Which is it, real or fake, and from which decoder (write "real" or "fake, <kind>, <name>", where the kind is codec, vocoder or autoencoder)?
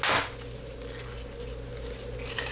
real